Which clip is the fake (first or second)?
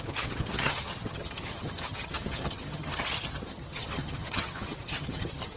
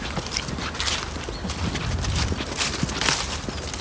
first